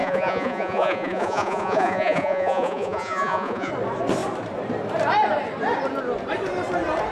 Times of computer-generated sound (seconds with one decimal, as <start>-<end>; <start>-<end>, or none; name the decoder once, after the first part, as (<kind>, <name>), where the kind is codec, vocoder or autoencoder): 0.0-3.7 (vocoder, Vocos)